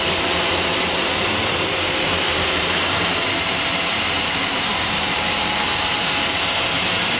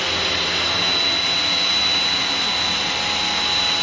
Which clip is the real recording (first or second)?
second